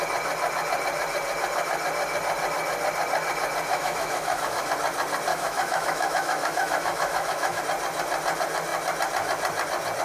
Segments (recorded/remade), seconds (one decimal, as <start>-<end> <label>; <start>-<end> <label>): 0.0-3.7 recorded; 3.7-4.7 remade; 4.7-5.3 recorded; 5.3-7.6 remade; 7.6-10.0 recorded